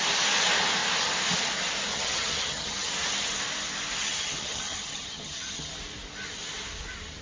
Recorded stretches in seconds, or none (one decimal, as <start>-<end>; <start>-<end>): 0.0-1.9; 2.9-4.0; 5.7-7.2